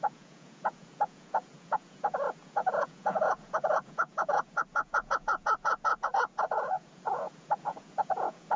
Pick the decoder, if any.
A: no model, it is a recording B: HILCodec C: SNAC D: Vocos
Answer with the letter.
D